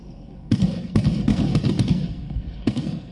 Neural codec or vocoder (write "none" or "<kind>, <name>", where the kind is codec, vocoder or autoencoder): codec, SNAC